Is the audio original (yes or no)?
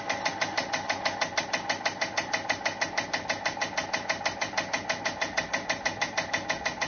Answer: yes